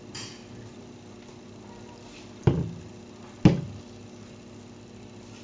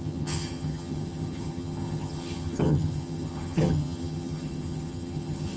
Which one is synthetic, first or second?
second